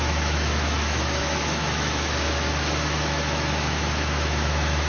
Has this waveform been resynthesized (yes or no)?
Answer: yes